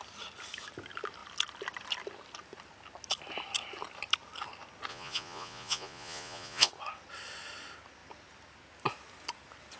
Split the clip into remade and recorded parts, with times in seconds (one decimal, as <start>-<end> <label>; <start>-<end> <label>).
0.0-4.9 recorded; 4.9-6.7 remade; 6.7-9.8 recorded